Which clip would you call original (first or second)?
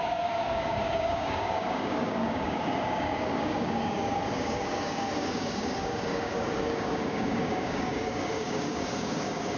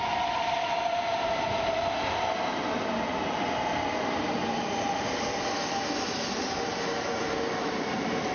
second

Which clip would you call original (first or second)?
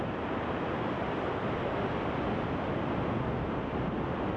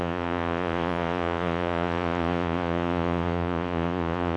first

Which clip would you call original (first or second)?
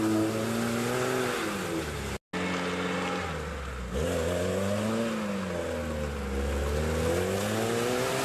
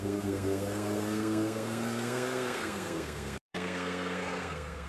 first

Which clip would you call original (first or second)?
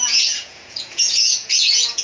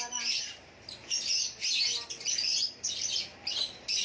second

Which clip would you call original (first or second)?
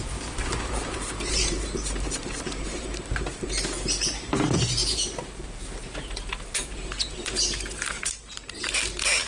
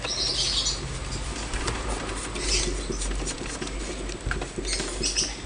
second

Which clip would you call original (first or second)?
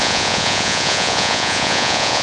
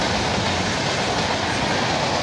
second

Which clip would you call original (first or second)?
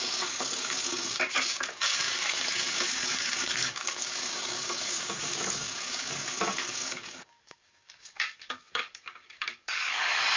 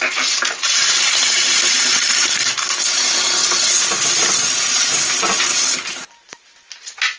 second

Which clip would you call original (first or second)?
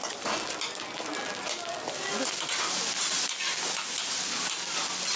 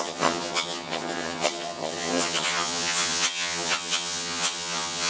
first